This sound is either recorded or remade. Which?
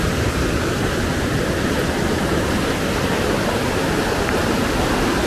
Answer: recorded